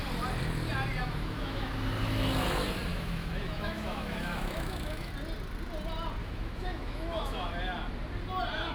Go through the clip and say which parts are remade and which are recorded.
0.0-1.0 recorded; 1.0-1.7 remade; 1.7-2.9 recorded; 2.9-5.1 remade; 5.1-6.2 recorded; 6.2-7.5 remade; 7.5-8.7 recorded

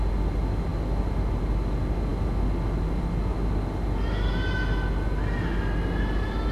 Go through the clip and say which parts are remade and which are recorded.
0.0-6.5 recorded

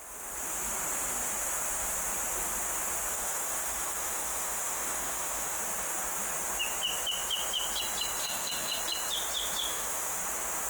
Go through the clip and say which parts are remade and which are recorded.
0.0-3.1 recorded; 3.1-5.6 remade; 5.6-8.2 recorded; 8.2-8.8 remade; 8.8-9.7 recorded; 9.7-10.2 remade; 10.2-10.7 recorded

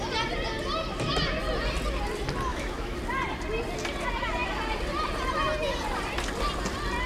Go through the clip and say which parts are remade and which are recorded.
0.0-2.5 recorded; 2.5-3.0 remade; 3.0-7.1 recorded

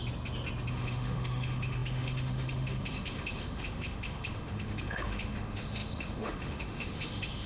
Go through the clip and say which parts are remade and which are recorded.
0.0-0.7 recorded; 0.7-7.5 remade